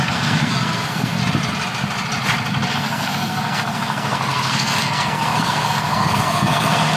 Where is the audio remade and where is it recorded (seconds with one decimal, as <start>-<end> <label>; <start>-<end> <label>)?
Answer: 0.0-1.2 remade; 1.2-2.7 recorded; 2.7-7.0 remade

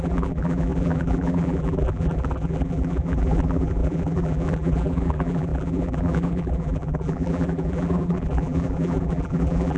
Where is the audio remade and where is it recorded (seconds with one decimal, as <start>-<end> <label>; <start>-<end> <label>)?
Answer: 0.0-9.8 remade